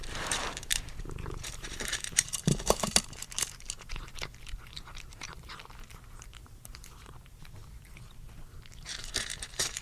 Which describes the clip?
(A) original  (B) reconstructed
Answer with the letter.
B